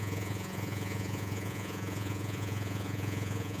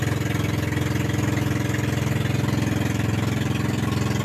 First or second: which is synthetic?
first